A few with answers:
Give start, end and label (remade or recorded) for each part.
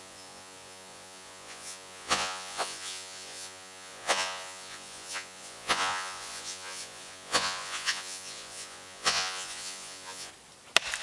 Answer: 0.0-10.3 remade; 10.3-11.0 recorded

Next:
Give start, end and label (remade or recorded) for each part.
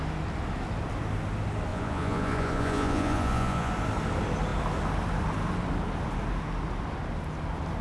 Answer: 0.0-1.7 recorded; 1.7-3.7 remade; 3.7-7.8 recorded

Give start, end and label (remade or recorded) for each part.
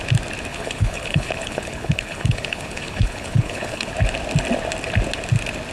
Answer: 0.0-0.5 recorded; 0.5-3.9 remade; 3.9-5.7 recorded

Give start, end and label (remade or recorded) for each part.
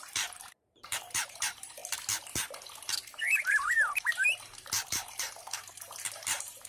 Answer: 0.0-1.8 remade; 1.8-3.3 recorded; 3.3-6.7 remade